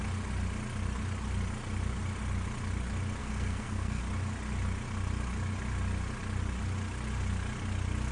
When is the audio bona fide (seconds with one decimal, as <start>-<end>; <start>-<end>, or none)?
0.0-3.2; 4.0-8.1